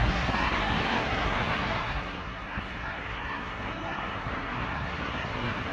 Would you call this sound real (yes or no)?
no